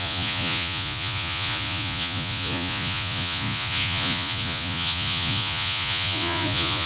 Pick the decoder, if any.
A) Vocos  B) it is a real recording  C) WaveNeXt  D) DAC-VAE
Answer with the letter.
A